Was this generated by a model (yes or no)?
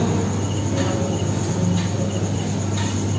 no